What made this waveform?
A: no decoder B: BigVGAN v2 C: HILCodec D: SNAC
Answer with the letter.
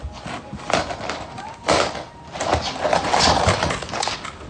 A